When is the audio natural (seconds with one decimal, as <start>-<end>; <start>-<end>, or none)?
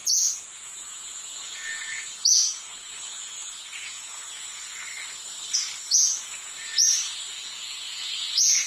4.8-5.8; 6.7-7.3